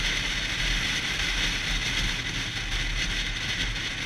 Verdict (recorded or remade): recorded